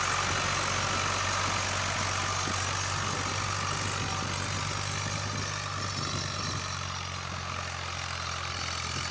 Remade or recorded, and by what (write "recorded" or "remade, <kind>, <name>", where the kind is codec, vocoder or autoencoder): recorded